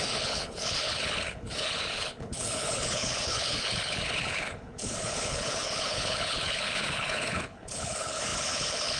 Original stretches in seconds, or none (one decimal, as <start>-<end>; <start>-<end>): none